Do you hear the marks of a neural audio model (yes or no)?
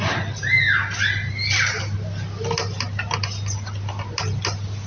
no